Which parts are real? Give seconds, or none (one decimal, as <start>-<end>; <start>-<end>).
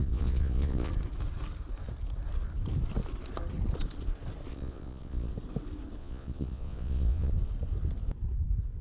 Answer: 0.9-4.5; 5.3-6.0; 7.3-8.8